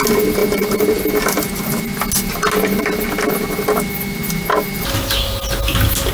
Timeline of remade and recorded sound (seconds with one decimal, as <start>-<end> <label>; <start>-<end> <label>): 0.0-6.1 recorded